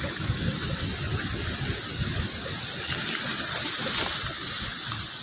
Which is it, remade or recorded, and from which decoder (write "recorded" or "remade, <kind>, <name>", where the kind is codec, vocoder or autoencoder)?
recorded